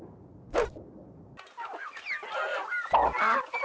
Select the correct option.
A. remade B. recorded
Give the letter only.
B